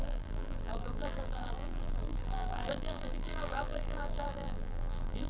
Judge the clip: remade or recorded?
remade